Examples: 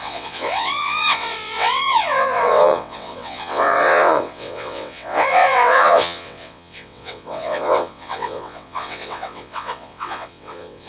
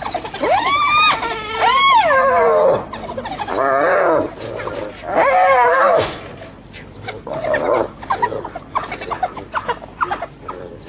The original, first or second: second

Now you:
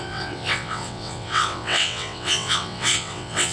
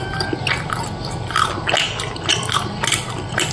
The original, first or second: second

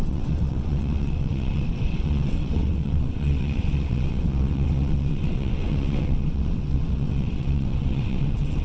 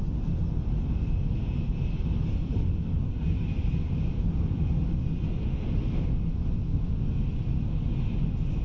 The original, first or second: second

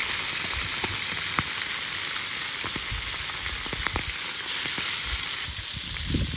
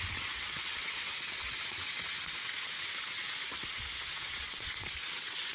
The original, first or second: first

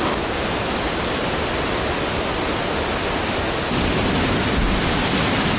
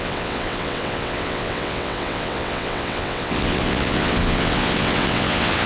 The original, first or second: first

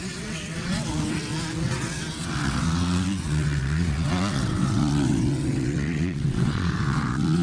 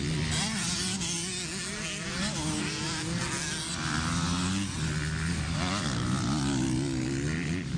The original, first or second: second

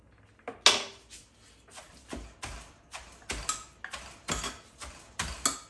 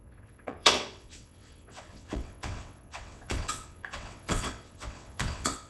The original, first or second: first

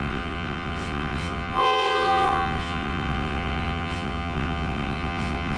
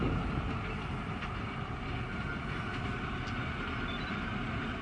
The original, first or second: second